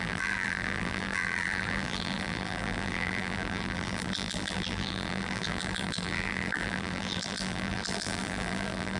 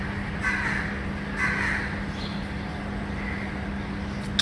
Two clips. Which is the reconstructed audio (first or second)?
first